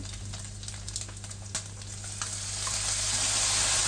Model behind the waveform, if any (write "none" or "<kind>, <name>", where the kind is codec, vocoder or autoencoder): none